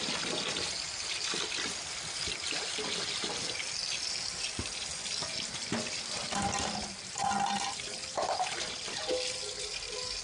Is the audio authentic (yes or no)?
yes